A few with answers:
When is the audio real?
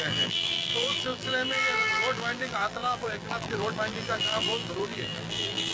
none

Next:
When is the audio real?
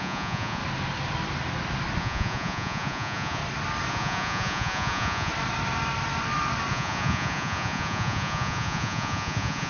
0.6-2.0; 3.4-3.9; 5.3-6.7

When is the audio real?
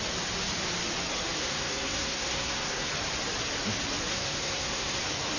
0.0-1.4; 2.9-4.1; 5.0-5.4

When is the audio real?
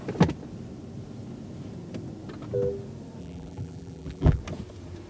0.0-3.2; 4.4-5.1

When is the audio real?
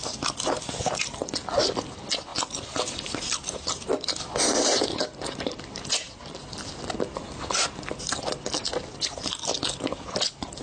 0.0-10.6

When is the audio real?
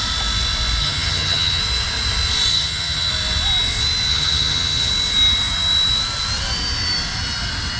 0.0-0.8; 1.6-2.5; 3.1-4.1; 4.9-7.8